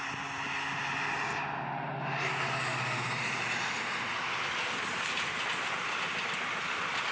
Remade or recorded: recorded